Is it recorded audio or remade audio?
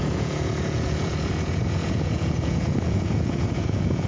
remade